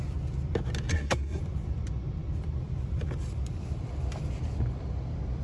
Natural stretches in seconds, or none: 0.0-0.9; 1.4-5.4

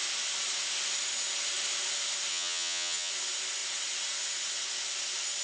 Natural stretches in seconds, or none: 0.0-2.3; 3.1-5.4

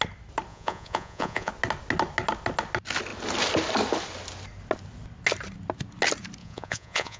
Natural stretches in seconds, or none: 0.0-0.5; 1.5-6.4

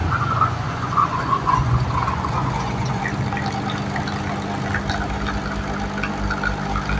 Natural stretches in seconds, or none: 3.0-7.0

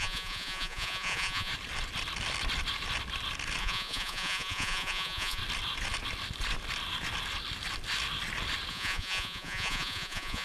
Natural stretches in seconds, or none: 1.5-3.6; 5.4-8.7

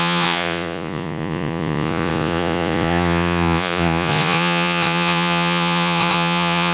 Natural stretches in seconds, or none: none